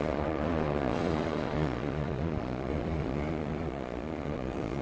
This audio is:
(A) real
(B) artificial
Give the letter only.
B